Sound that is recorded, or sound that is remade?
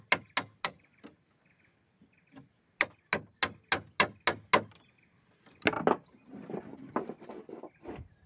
recorded